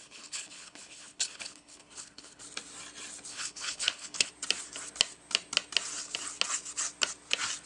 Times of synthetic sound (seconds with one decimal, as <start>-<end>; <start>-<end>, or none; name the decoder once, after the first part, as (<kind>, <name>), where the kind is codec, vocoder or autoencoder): 0.0-2.4 (codec, HILCodec); 3.3-4.3